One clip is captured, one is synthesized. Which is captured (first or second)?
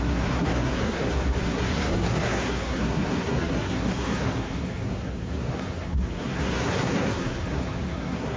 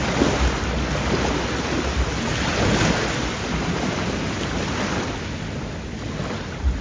second